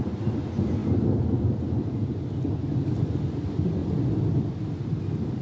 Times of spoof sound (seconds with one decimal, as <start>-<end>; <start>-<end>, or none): none